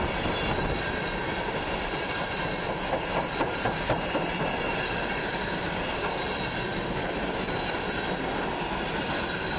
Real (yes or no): yes